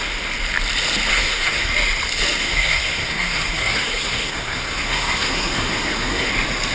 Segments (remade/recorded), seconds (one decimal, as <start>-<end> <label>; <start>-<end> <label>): 0.0-1.1 recorded; 1.1-1.7 remade; 1.7-2.4 recorded; 2.4-6.3 remade; 6.3-6.7 recorded